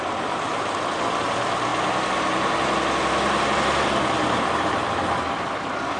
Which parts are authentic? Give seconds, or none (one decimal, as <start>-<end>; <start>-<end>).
0.0-6.0

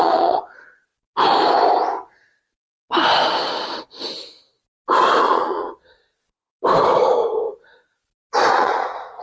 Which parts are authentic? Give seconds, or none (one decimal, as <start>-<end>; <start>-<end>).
0.9-5.2; 6.5-8.5

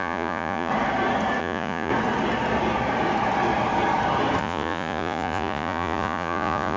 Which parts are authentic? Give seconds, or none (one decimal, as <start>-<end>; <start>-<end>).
0.7-1.4; 1.9-4.4

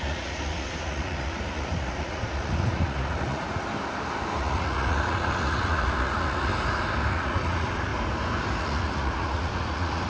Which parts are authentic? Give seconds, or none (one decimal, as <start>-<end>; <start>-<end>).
3.7-4.4; 6.5-7.1; 7.9-8.6